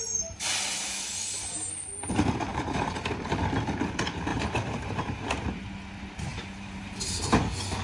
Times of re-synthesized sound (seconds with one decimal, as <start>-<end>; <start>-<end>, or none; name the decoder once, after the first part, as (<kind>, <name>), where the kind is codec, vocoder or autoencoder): 2.5-3.0 (vocoder, BigVGAN v2); 4.3-5.3; 6.3-7.3